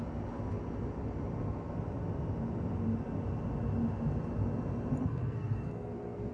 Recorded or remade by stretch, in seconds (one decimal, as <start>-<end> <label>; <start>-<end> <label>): 0.0-5.0 recorded; 5.0-6.3 remade